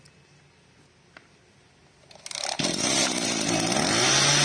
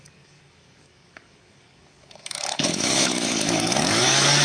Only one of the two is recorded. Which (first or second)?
first